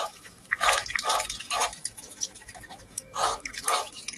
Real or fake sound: fake